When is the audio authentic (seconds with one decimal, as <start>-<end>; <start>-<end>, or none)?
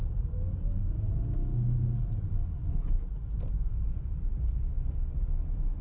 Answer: 1.1-2.6; 4.1-5.8